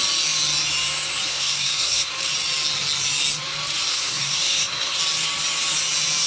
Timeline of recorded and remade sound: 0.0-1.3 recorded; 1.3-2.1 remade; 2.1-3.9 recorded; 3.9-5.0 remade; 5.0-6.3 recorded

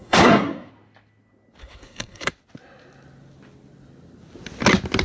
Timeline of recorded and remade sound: 0.0-0.7 remade; 0.7-1.6 recorded; 1.6-2.3 remade; 2.3-5.0 recorded